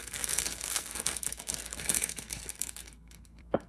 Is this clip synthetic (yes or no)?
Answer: yes